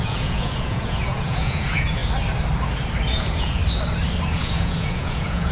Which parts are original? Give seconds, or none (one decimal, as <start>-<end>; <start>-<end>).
2.0-3.1; 3.6-4.4